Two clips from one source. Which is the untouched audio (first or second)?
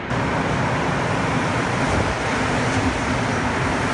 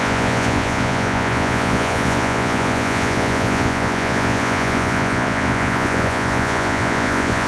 first